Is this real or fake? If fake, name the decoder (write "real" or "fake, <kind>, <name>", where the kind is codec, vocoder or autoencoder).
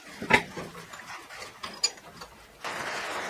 real